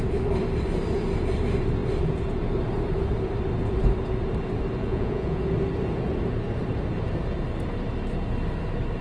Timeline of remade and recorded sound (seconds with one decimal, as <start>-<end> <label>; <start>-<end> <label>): 0.0-4.8 recorded; 4.8-5.4 remade; 5.4-9.0 recorded